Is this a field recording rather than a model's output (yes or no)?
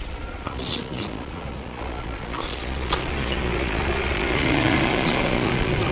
no